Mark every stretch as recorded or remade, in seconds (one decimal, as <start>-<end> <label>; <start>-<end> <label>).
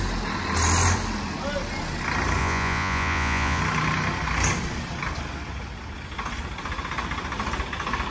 0.0-2.4 recorded; 2.4-3.6 remade; 3.6-8.1 recorded